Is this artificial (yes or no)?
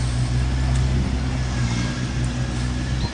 no